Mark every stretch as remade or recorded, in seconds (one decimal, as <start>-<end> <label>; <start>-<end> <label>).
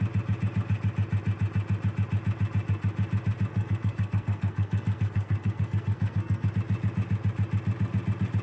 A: 0.0-3.5 recorded; 3.5-6.5 remade; 6.5-8.4 recorded